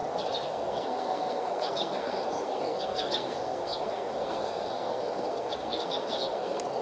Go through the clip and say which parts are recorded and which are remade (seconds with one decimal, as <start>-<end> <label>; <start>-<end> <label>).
0.0-6.8 remade